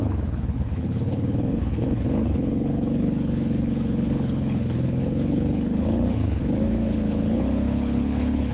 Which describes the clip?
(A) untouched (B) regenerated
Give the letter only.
B